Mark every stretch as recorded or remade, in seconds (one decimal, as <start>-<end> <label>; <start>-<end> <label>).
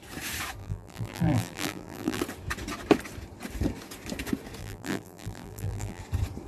0.0-0.6 recorded; 0.6-2.2 remade; 2.2-4.6 recorded; 4.6-6.0 remade; 6.0-6.5 recorded